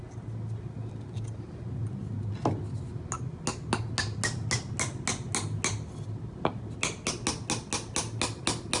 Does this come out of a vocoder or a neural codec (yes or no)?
no